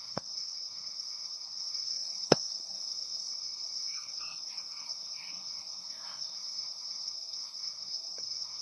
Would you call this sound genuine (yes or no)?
no